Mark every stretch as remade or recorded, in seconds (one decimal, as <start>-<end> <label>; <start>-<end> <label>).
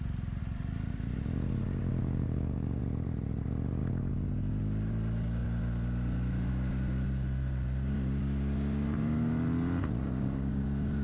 0.0-1.6 recorded; 1.6-2.8 remade; 2.8-10.0 recorded; 10.0-10.6 remade; 10.6-11.0 recorded